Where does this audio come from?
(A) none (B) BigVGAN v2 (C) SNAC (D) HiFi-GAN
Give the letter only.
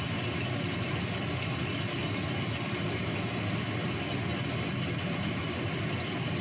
A